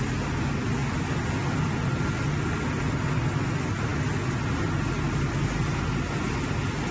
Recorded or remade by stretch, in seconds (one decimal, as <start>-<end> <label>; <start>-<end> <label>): 0.0-6.9 recorded